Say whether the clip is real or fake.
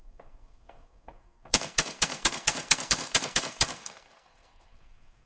fake